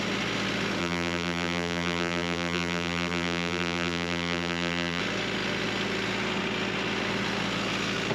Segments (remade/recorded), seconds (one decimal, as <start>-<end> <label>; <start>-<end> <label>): 0.0-0.8 recorded; 0.8-5.0 remade; 5.0-8.1 recorded